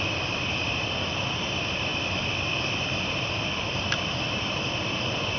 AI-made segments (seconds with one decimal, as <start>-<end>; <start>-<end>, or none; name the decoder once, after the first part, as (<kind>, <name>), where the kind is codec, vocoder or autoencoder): none